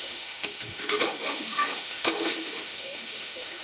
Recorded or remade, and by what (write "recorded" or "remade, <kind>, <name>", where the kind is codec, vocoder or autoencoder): remade, autoencoder, DAC-VAE